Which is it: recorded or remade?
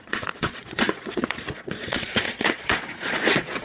remade